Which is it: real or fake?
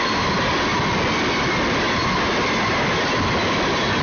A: real